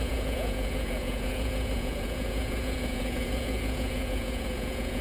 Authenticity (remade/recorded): remade